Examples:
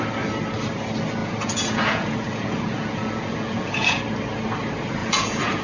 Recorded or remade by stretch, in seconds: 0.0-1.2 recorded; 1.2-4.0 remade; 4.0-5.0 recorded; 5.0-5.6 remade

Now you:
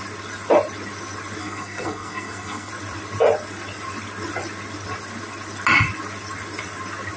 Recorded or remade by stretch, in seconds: 0.0-1.4 recorded; 1.4-2.7 remade; 2.7-7.2 recorded

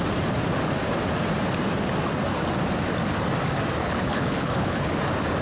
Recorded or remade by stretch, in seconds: 0.0-3.8 recorded; 3.8-5.0 remade; 5.0-5.4 recorded

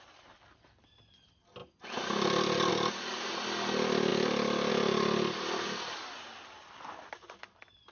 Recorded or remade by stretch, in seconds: 0.0-7.9 recorded